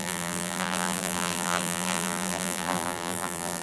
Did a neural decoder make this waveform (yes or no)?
yes